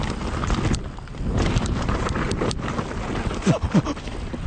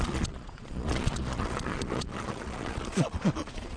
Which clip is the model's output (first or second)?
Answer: second